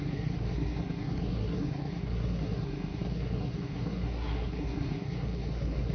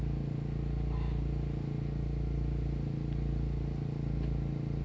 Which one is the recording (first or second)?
second